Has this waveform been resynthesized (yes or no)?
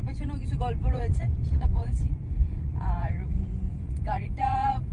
yes